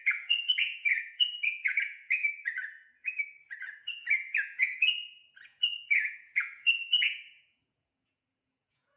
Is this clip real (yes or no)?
no